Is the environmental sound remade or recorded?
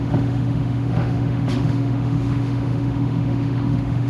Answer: remade